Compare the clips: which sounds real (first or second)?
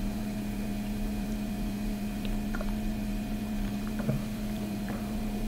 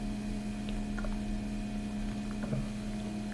second